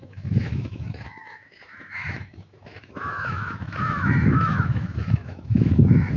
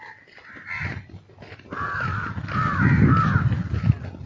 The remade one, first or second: first